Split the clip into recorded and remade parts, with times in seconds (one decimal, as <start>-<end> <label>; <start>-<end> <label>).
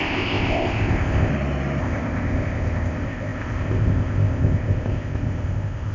0.0-1.3 remade; 1.3-1.8 recorded; 1.8-5.9 remade